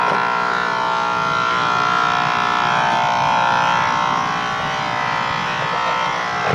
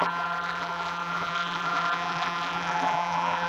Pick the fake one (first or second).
second